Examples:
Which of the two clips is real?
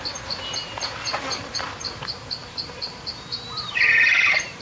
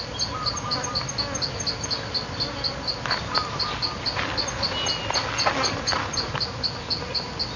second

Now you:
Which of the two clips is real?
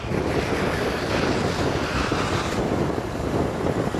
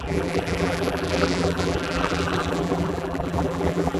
first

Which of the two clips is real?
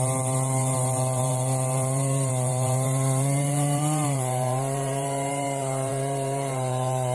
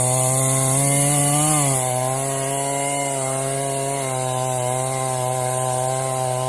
second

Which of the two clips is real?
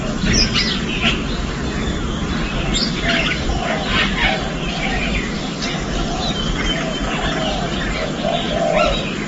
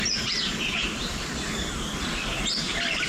first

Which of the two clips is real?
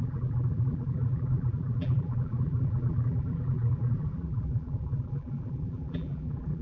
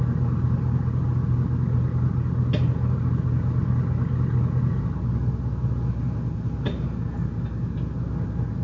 second